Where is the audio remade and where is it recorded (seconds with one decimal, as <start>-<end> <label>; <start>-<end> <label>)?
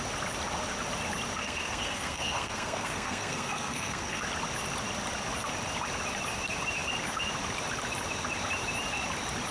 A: 0.0-1.4 recorded; 1.4-4.2 remade; 4.2-9.5 recorded